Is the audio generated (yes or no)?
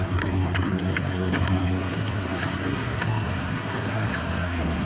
yes